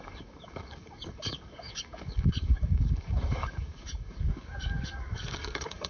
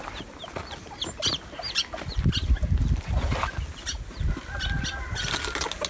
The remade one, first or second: first